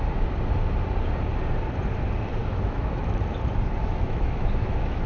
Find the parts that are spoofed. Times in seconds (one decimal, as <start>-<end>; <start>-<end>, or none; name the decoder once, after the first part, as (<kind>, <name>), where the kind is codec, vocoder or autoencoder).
2.4-3.2 (autoencoder, DAC-VAE); 3.8-5.1